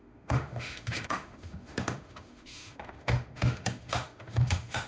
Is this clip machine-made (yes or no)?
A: yes